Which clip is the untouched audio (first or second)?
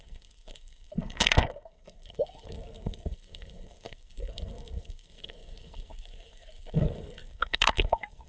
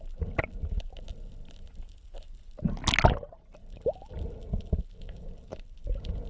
second